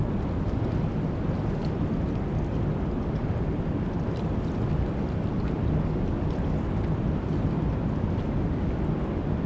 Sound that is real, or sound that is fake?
real